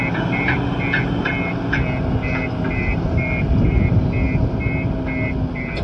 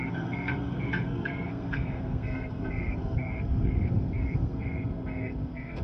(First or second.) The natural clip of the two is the first